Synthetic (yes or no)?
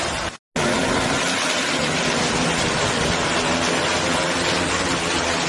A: no